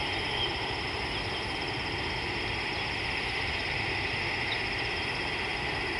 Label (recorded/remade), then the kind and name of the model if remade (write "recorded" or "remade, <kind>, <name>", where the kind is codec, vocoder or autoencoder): recorded